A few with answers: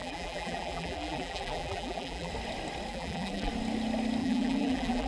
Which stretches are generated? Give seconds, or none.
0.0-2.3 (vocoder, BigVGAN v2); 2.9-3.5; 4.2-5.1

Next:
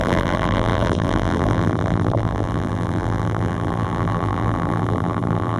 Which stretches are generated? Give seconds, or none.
0.0-5.6 (vocoder, BigVGAN v2)

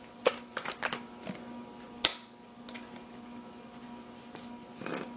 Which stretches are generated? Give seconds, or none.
none